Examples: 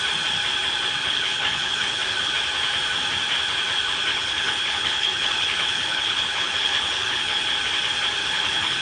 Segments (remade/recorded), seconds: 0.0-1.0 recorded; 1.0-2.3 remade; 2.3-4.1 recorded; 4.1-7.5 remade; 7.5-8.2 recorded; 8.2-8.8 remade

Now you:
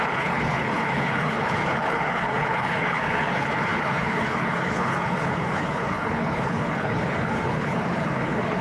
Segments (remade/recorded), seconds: 0.0-8.6 remade